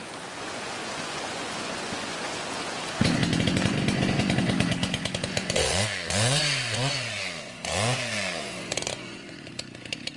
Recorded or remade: remade